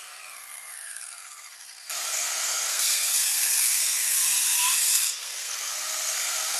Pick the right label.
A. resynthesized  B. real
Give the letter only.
A